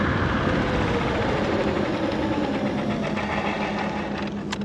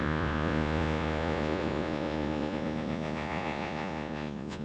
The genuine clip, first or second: first